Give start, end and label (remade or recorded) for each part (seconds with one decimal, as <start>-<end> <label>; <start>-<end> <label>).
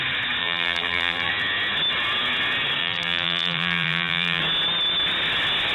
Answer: 0.0-0.4 recorded; 0.4-1.3 remade; 1.3-2.8 recorded; 2.8-4.4 remade; 4.4-5.7 recorded